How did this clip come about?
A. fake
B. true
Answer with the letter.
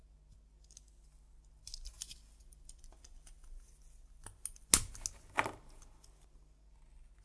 B